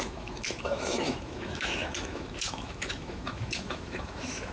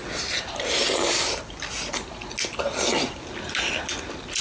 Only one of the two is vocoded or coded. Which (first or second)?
first